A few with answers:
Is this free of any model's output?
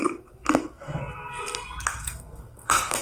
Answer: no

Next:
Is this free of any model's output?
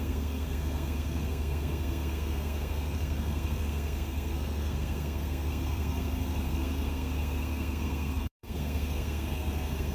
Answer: no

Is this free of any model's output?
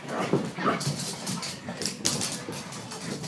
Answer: yes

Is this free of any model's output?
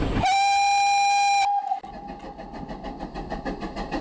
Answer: yes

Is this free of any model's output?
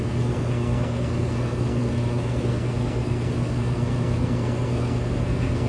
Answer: no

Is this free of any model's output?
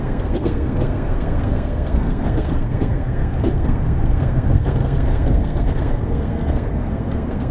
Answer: no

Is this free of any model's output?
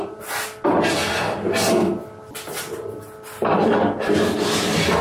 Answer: yes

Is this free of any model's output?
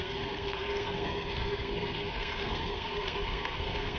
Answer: no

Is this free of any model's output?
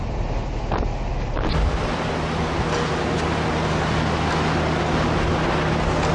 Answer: yes